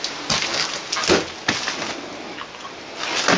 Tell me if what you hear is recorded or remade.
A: recorded